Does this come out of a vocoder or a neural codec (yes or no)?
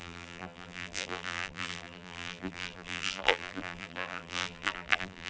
yes